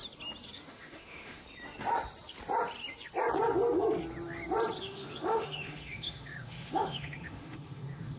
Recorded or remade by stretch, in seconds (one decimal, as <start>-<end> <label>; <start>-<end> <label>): 0.0-0.7 recorded; 0.7-1.4 remade; 1.4-4.8 recorded; 4.8-8.2 remade